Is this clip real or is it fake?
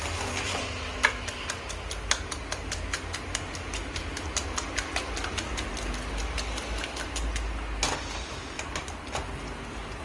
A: real